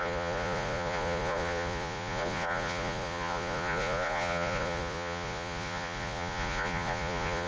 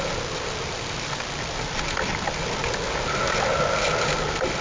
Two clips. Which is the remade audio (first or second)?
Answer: first